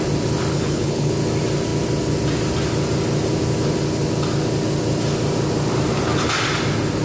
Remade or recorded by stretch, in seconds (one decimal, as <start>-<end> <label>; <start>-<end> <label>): 0.0-0.5 recorded; 0.5-1.1 remade; 1.1-7.0 recorded